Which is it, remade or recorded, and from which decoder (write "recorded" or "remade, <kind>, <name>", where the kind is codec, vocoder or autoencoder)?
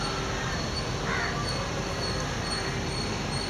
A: recorded